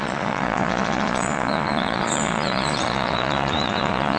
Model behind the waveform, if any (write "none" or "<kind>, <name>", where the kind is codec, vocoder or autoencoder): vocoder, Vocos